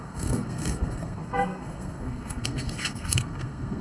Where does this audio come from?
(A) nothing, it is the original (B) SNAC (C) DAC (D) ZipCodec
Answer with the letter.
B